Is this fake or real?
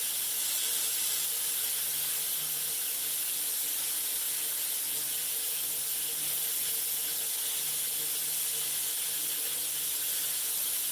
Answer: real